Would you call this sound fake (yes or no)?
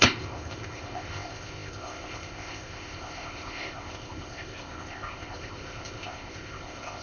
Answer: yes